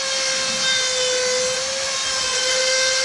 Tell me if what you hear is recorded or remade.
recorded